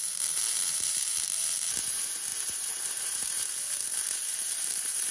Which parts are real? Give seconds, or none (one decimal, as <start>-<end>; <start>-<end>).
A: none